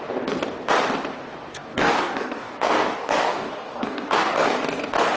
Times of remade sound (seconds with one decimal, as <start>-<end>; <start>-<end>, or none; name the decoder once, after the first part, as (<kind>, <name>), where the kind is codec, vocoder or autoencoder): 1.5-4.6 (codec, DAC)